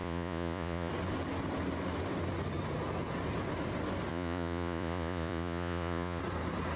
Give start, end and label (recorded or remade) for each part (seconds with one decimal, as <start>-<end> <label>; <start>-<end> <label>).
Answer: 0.0-0.9 remade; 0.9-4.1 recorded; 4.1-6.2 remade; 6.2-6.8 recorded